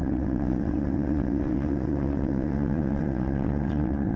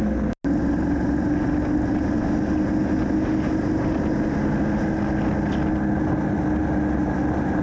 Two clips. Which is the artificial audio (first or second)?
first